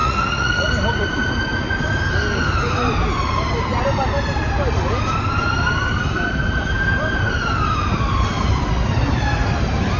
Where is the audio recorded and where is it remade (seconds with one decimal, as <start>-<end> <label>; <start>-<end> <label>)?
0.0-0.7 remade; 0.7-10.0 recorded